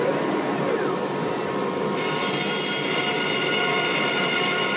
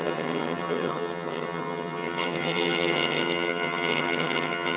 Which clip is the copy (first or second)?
second